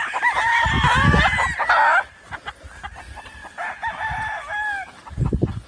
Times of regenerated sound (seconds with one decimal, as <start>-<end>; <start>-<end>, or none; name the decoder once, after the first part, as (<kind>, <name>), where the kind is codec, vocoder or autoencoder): none